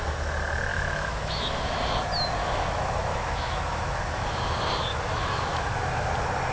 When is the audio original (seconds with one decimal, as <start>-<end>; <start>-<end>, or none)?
0.0-0.7; 1.9-2.4; 4.4-4.9; 6.1-6.5